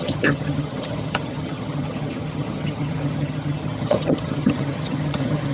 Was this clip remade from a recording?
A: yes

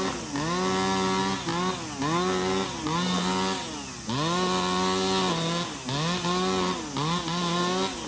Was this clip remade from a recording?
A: no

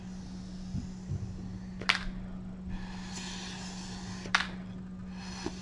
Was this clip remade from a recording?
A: no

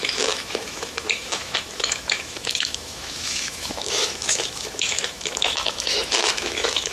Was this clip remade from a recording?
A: yes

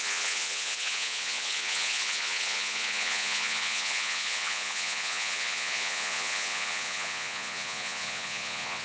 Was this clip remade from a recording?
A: yes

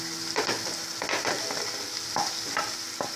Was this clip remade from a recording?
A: no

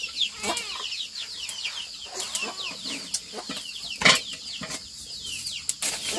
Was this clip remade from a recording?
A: no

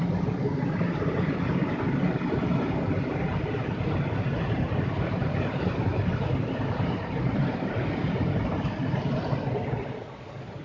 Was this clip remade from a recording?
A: no